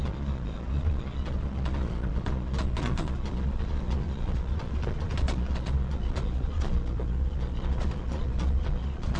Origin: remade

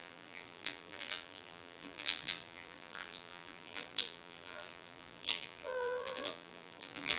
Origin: remade